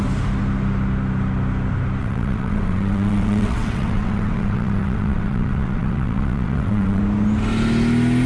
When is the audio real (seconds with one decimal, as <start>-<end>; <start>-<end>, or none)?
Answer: 0.0-2.0; 7.0-8.3